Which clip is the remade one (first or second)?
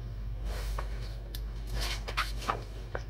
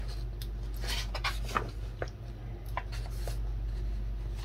first